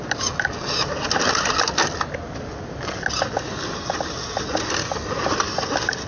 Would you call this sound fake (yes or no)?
no